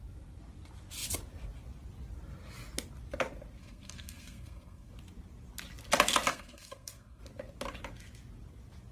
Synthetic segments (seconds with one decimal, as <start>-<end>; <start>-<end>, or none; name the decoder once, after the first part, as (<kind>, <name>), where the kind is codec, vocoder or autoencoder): 3.6-4.9 (codec, SNAC); 6.3-7.2